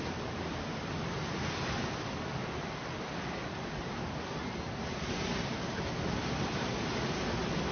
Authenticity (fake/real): real